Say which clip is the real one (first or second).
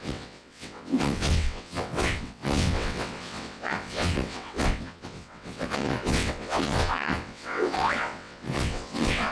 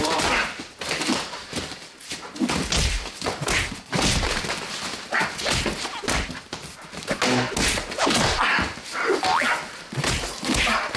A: second